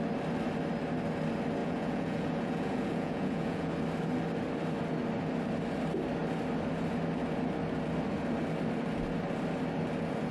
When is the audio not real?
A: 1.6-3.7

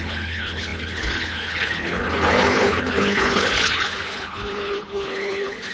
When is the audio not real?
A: 0.0-5.7

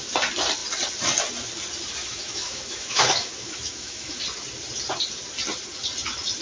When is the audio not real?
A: 2.0-4.2

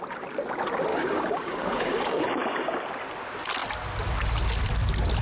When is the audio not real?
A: 0.9-2.8